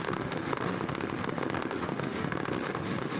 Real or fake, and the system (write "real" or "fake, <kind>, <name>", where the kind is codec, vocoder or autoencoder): fake, autoencoder, DAC-VAE